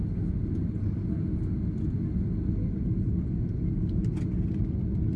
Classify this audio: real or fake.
real